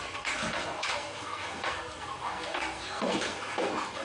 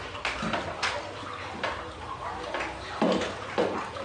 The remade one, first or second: first